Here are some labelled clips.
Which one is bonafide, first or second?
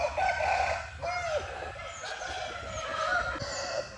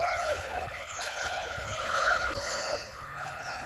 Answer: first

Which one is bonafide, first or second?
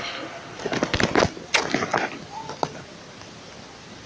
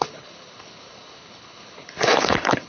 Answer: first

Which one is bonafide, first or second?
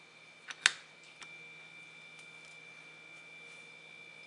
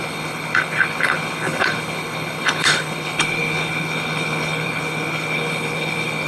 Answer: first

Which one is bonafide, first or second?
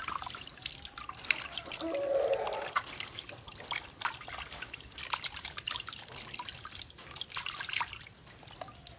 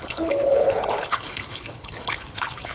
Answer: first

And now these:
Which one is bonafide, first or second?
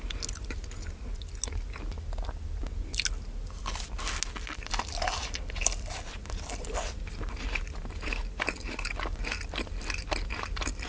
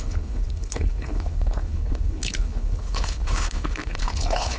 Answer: first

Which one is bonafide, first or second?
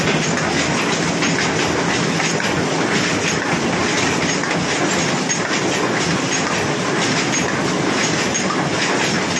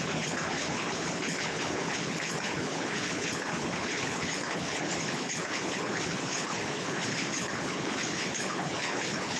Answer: first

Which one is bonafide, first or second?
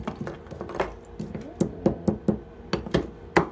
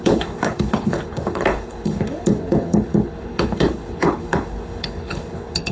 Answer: first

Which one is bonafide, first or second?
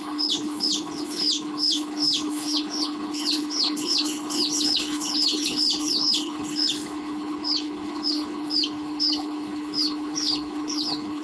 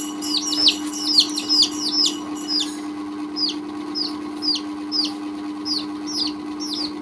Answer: second